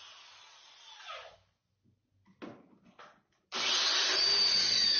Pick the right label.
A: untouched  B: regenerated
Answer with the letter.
A